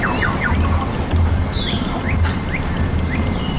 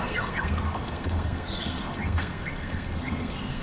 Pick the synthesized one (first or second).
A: second